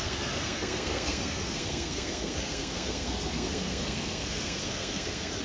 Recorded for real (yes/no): no